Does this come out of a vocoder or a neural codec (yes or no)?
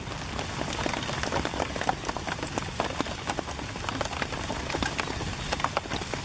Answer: no